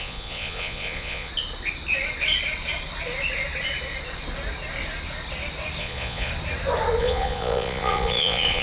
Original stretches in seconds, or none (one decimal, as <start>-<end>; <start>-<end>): 1.3-5.8; 6.3-7.0